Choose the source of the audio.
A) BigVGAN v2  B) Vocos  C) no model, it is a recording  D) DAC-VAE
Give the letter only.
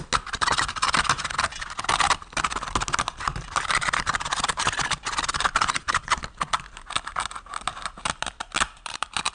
C